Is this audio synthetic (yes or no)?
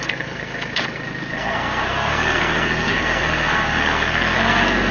yes